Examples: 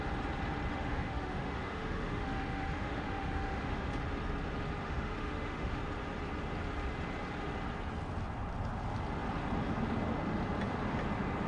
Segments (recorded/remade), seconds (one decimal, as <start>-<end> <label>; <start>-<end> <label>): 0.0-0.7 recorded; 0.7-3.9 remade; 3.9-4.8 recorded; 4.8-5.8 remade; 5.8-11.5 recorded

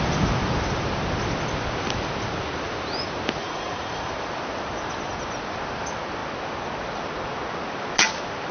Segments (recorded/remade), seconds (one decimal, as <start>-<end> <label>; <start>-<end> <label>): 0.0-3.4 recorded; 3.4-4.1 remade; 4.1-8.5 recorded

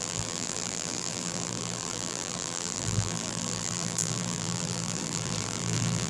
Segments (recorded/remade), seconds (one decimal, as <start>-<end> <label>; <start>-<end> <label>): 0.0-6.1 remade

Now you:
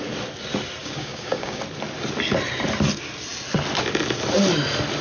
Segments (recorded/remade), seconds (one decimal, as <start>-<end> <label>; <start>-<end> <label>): 0.0-0.8 recorded; 0.8-1.6 remade; 1.6-5.0 recorded

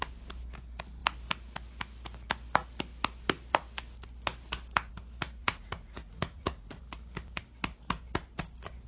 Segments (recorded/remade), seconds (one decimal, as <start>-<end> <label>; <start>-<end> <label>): 0.0-5.4 recorded; 5.4-6.8 remade; 6.8-8.9 recorded

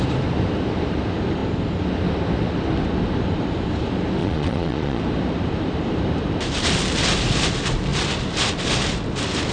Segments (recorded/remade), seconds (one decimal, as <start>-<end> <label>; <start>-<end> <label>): 0.0-4.2 recorded; 4.2-5.0 remade; 5.0-9.5 recorded

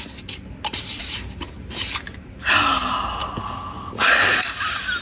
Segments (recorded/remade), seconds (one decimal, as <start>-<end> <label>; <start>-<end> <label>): 0.0-0.7 recorded; 0.7-2.5 remade; 2.5-5.0 recorded